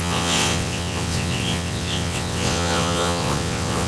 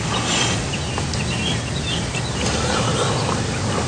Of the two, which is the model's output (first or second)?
first